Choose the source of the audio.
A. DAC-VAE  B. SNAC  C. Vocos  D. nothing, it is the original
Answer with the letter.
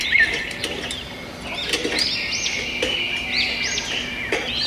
D